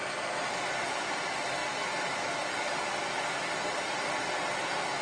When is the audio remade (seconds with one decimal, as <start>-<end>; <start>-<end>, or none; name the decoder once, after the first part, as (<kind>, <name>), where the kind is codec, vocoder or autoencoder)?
none

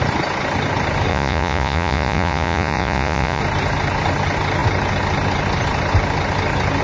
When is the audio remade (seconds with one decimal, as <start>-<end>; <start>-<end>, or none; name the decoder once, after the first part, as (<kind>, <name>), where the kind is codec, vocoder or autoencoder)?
1.1-3.4 (vocoder, Vocos)

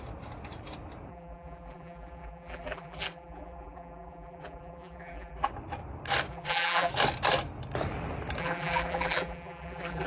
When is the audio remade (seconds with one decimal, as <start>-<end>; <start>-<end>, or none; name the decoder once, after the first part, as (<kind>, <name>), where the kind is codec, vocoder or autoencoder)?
1.1-5.5 (vocoder, BigVGAN v2); 6.3-6.9; 8.4-10.1

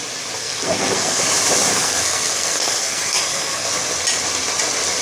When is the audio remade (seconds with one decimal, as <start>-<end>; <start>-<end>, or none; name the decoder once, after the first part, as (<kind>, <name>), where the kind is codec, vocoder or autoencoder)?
0.4-1.2 (codec, SNAC); 1.7-3.7

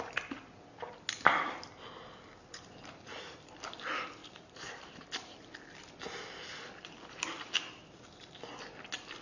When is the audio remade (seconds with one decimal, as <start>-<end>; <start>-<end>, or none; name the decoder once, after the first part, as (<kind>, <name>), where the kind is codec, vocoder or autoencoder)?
4.2-4.9 (vocoder, BigVGAN v2)